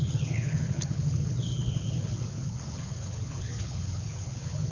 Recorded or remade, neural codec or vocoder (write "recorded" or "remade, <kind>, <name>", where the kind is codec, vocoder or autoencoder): remade, codec, HILCodec